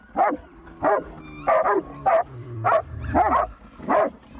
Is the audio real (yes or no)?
yes